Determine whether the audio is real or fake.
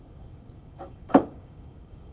fake